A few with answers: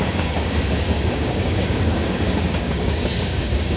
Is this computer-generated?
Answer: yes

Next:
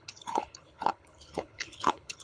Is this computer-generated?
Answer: yes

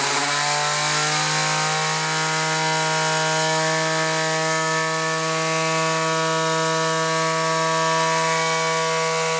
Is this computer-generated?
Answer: no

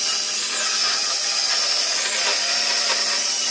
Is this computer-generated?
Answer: no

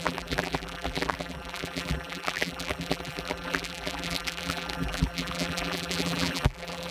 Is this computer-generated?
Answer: yes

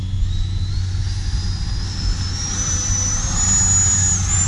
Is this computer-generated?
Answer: no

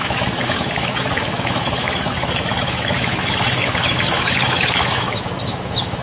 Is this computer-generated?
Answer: yes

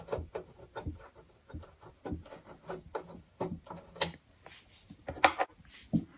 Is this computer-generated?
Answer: no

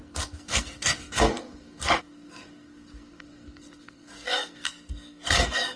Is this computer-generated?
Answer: yes